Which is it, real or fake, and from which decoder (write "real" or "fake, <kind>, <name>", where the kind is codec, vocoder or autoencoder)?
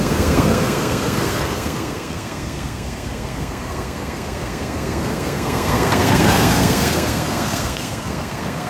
fake, codec, SNAC